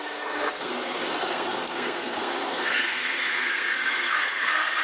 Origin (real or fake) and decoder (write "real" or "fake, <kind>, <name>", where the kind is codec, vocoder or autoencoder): fake, codec, SNAC